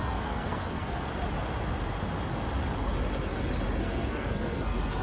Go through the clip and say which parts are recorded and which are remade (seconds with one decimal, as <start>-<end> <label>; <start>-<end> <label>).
0.0-1.1 remade; 1.1-3.8 recorded; 3.8-5.0 remade